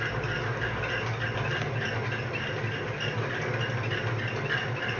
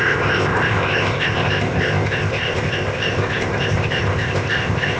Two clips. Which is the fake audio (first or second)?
second